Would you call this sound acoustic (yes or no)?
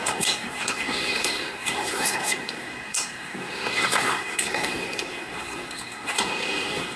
no